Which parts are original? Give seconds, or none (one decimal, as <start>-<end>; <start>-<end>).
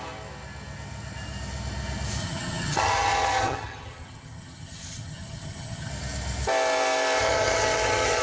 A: 0.0-2.2; 5.9-7.2